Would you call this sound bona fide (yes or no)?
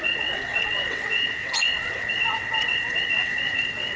no